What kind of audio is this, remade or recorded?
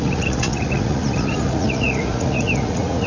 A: remade